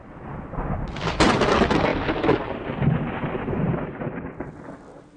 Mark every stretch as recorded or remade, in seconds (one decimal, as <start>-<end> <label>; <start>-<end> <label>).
0.0-5.2 recorded